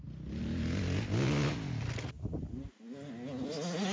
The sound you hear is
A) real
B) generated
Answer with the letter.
A